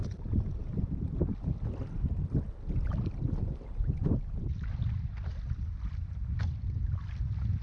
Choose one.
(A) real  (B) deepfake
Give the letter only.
A